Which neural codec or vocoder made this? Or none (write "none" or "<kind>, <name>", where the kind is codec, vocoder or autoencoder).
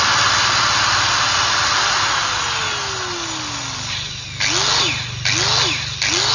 none